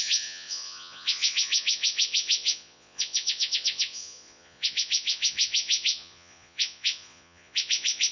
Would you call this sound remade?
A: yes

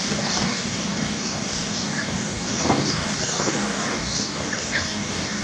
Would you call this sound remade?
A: yes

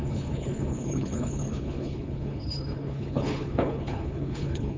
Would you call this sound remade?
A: yes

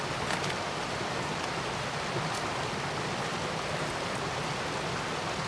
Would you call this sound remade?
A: no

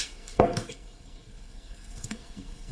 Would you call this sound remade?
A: yes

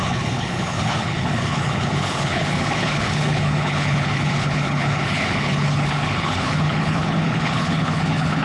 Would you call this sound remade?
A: yes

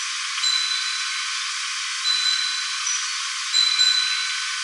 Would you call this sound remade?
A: yes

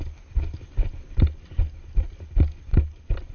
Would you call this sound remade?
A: no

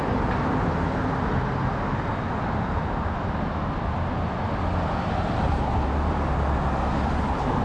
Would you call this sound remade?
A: no